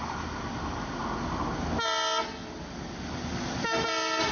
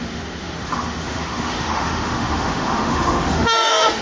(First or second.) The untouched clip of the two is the first